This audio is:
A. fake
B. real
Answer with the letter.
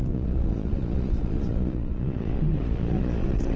A